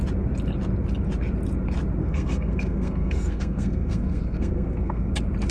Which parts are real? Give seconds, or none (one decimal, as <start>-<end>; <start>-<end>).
0.0-2.0; 5.1-5.5